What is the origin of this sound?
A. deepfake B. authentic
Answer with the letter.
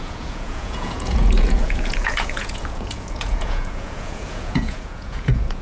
A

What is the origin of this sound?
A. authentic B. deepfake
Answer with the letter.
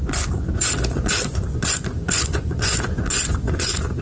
B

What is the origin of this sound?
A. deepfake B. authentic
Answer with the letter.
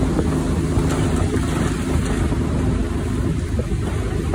B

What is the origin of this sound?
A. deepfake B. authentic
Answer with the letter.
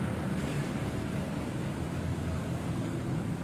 A